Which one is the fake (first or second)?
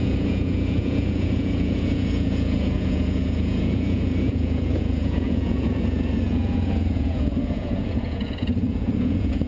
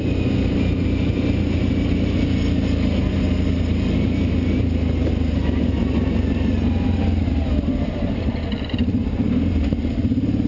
first